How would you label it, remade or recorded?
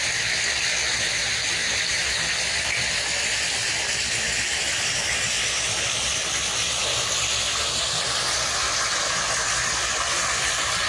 recorded